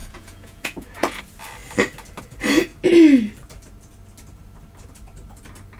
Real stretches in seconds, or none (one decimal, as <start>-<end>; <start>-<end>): 1.2-5.8